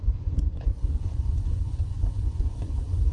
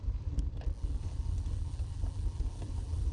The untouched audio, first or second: second